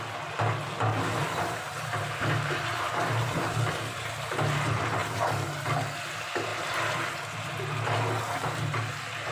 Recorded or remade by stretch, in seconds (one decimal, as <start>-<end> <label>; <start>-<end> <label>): 0.0-0.9 recorded; 0.9-3.6 remade; 3.6-5.0 recorded; 5.0-5.7 remade; 5.7-9.3 recorded